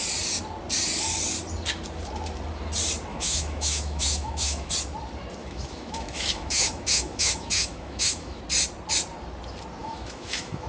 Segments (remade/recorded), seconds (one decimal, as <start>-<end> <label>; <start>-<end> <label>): 0.0-3.1 recorded; 3.1-4.7 remade; 4.7-5.4 recorded; 5.4-8.4 remade; 8.4-9.8 recorded; 9.8-10.7 remade